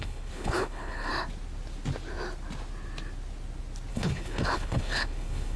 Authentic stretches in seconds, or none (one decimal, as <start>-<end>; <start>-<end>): 1.1-3.9

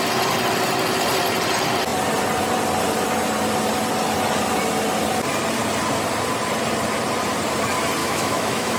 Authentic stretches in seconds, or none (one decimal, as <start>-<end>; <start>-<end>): 0.0-8.0

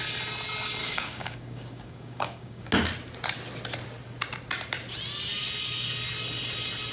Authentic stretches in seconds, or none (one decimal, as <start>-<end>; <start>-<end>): 0.0-0.8; 2.7-6.9

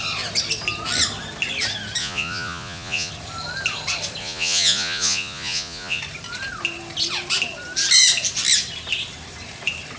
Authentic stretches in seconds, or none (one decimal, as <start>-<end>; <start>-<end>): 0.0-2.0; 3.1-4.2; 6.0-10.0

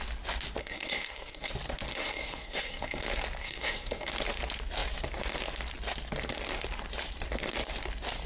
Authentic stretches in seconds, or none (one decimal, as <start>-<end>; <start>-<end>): 0.0-0.6; 1.5-1.9; 3.0-3.4; 4.1-8.3